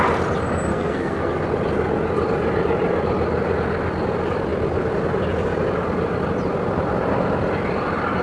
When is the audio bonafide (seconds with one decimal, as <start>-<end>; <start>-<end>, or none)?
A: 0.0-0.7; 1.3-8.2